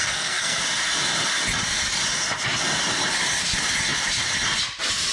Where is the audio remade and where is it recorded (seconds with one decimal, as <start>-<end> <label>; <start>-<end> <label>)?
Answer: 0.0-0.6 remade; 0.6-5.1 recorded